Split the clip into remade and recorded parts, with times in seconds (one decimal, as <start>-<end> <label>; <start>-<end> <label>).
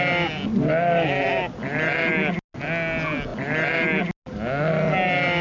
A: 0.0-5.4 recorded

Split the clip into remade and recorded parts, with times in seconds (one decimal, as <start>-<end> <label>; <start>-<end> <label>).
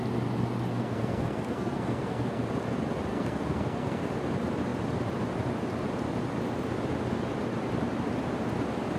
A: 0.0-0.7 recorded; 0.7-2.4 remade; 2.4-3.1 recorded; 3.1-4.0 remade; 4.0-9.0 recorded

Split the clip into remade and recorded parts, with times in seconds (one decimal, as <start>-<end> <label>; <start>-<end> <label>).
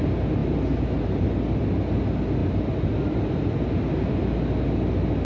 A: 0.0-5.2 recorded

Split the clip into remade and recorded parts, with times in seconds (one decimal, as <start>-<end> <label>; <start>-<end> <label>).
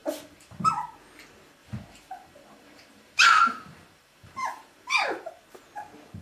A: 0.0-0.7 remade; 0.7-1.6 recorded; 1.6-5.3 remade; 5.3-6.2 recorded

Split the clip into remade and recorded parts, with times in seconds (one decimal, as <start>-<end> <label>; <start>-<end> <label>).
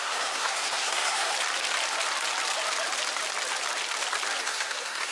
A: 0.0-1.3 remade; 1.3-4.4 recorded; 4.4-5.1 remade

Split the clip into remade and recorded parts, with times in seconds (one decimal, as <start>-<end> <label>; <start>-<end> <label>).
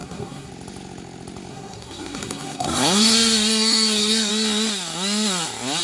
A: 0.0-0.5 remade; 0.5-1.5 recorded; 1.5-4.3 remade; 4.3-5.8 recorded